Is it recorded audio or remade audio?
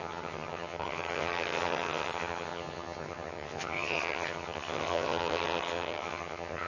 remade